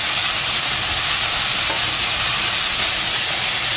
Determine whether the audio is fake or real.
real